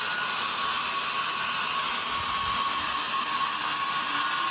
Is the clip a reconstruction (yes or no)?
no